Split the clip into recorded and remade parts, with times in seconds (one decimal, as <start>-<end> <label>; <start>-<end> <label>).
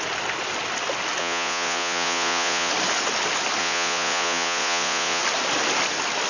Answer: 0.0-1.2 recorded; 1.2-2.7 remade; 2.7-3.6 recorded; 3.6-5.2 remade; 5.2-6.3 recorded